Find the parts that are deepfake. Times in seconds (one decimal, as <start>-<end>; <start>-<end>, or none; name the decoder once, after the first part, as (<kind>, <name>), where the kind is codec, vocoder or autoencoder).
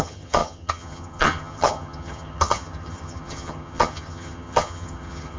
0.0-5.4 (vocoder, HiFi-GAN)